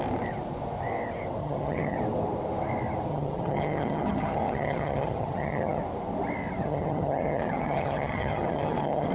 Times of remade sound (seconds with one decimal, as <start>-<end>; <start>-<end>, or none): 1.4-2.0; 3.1-5.8; 6.6-9.1